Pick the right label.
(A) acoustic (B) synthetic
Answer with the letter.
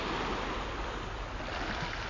A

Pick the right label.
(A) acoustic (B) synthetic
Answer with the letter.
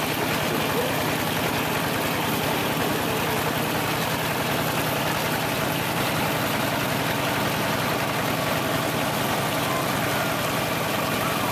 A